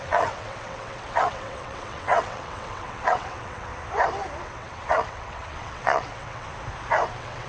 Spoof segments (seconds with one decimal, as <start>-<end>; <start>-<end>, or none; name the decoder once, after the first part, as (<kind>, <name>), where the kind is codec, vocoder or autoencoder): 0.0-3.7 (vocoder, WaveNeXt); 4.4-6.5; 7.1-7.5